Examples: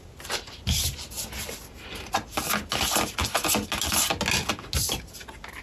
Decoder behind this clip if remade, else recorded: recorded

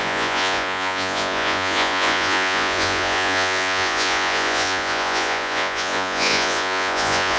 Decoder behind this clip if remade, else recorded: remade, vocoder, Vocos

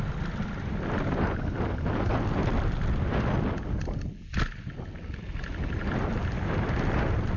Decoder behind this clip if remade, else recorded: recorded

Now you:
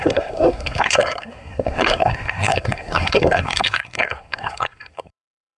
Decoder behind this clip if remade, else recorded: remade, codec, SNAC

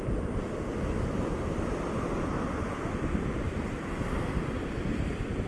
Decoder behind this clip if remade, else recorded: recorded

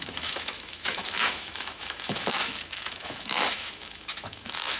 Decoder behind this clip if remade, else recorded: remade, autoencoder, DAC-VAE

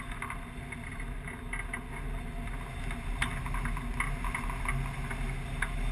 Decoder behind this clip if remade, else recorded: recorded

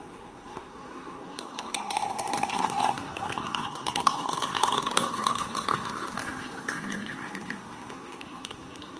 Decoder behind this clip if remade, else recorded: remade, codec, SNAC